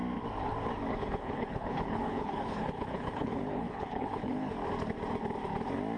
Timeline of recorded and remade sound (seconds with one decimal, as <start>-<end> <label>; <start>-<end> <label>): 0.0-0.9 recorded; 0.9-4.5 remade; 4.5-6.0 recorded